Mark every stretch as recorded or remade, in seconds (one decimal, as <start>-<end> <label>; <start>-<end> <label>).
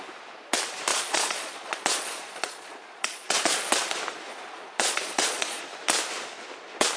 0.0-0.9 recorded; 0.9-3.7 remade; 3.7-4.3 recorded; 4.3-5.6 remade; 5.6-7.0 recorded